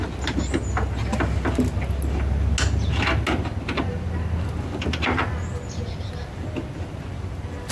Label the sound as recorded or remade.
recorded